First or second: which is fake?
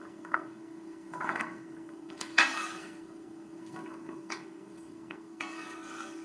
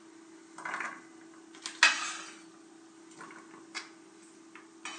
first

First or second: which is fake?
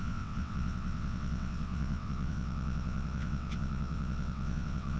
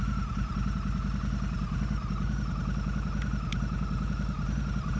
first